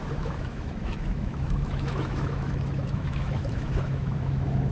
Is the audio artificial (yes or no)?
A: yes